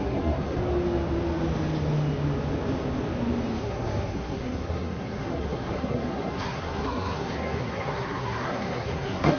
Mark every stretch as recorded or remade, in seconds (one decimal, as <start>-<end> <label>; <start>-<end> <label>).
0.0-0.6 remade; 0.6-3.6 recorded; 3.6-9.4 remade